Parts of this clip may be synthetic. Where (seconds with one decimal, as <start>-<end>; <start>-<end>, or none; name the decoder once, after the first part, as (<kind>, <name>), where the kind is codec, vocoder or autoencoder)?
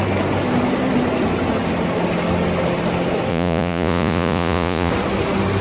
3.3-4.9 (vocoder, Vocos)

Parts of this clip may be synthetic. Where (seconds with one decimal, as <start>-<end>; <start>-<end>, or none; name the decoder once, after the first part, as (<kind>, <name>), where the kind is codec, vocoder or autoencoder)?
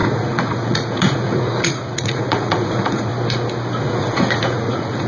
0.0-3.1 (vocoder, Vocos); 3.8-5.1